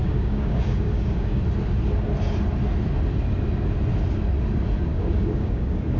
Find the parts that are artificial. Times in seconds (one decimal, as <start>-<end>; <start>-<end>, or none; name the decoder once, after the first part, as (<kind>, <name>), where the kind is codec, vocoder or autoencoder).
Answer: 0.0-1.4 (codec, DAC); 4.9-6.0